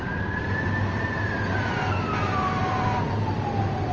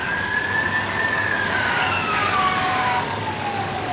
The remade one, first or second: second